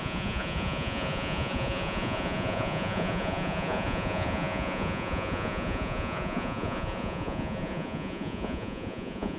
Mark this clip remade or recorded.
remade